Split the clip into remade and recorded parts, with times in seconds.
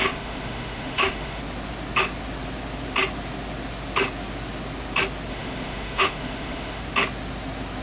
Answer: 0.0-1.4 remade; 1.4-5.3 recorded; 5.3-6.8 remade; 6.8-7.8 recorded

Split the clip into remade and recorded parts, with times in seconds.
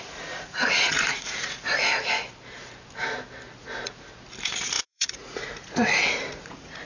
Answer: 0.0-1.9 remade; 1.9-3.6 recorded; 3.6-4.1 remade; 4.1-4.6 recorded; 4.6-6.9 remade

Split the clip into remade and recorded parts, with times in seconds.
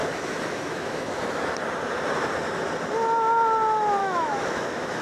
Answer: 0.0-1.2 remade; 1.2-4.0 recorded; 4.0-5.0 remade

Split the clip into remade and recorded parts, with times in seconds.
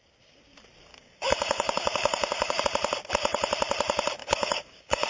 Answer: 0.0-0.9 recorded; 0.9-2.6 remade; 2.6-4.2 recorded; 4.2-5.1 remade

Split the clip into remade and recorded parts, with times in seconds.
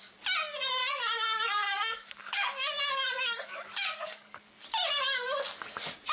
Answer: 0.0-0.8 recorded; 0.8-4.5 remade; 4.5-6.1 recorded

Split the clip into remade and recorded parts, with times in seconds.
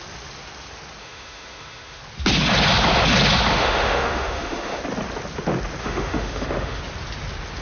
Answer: 0.0-1.0 recorded; 1.0-2.0 remade; 2.0-3.5 recorded; 3.5-4.8 remade; 4.8-5.8 recorded; 5.8-6.8 remade; 6.8-7.6 recorded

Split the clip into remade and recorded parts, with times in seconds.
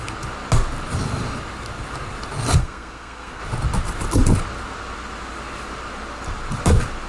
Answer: 0.0-2.6 recorded; 2.6-3.4 remade; 3.4-7.1 recorded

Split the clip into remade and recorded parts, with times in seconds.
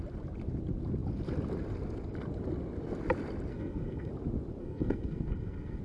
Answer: 0.0-3.5 recorded; 3.5-4.1 remade; 4.1-4.6 recorded; 4.6-5.8 remade